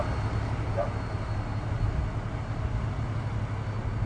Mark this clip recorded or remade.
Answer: recorded